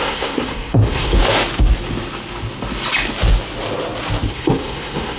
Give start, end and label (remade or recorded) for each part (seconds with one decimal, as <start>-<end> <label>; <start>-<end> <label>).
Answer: 0.0-1.2 remade; 1.2-4.3 recorded; 4.3-5.2 remade